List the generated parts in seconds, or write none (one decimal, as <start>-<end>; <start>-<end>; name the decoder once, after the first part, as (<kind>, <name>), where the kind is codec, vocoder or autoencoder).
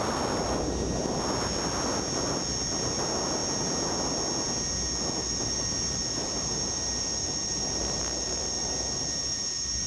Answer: 5.2-9.9 (vocoder, BigVGAN v2)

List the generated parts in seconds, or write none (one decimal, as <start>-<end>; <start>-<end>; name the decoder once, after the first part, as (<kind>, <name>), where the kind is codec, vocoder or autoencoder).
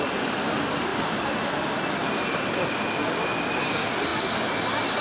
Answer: 0.9-1.5 (vocoder, BigVGAN v2)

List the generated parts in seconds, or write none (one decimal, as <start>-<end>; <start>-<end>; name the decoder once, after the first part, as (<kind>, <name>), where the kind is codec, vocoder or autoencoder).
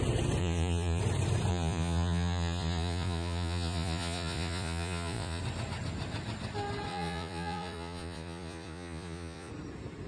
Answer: 0.4-1.0 (vocoder, Vocos); 1.5-5.4; 6.9-9.5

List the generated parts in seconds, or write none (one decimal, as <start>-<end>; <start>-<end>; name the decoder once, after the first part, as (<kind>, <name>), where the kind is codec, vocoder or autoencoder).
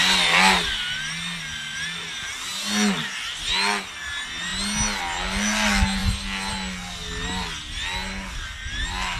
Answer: none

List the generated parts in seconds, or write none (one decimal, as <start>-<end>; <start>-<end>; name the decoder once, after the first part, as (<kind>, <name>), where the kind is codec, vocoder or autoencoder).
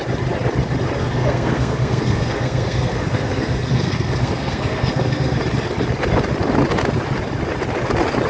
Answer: 1.0-5.4 (codec, SNAC)